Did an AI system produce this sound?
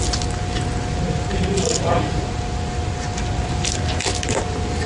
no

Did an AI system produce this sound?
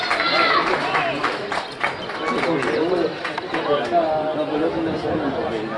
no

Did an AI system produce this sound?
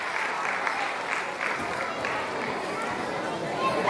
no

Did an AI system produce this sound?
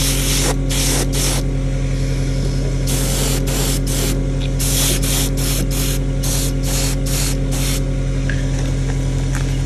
no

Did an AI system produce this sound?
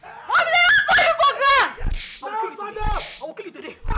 no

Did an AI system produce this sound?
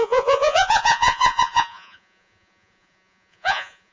yes